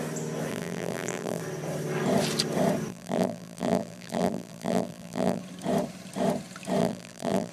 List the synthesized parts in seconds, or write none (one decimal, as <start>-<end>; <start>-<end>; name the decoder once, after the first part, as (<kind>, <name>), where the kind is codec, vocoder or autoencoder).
0.5-1.4 (vocoder, BigVGAN v2); 2.9-5.4; 6.8-7.5

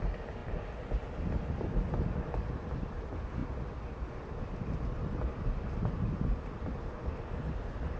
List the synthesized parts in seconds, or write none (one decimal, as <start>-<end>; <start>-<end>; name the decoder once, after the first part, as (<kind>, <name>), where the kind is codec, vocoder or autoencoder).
none

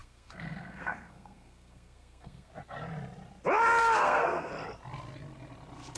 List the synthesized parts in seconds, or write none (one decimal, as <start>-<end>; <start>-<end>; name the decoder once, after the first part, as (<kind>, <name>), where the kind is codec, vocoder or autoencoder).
0.0-2.5 (codec, SNAC); 3.8-4.5